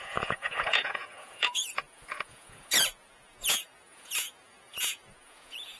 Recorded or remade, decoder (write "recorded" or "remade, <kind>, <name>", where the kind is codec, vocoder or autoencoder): remade, vocoder, Vocos